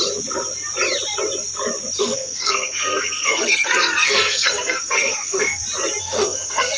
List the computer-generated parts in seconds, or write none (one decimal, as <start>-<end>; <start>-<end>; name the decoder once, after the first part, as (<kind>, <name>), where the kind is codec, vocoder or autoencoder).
2.0-5.6 (codec, SNAC); 6.0-6.8